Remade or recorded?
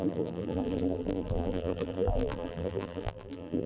remade